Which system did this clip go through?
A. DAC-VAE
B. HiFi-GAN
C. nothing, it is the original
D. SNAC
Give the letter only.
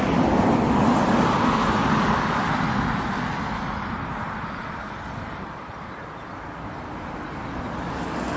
C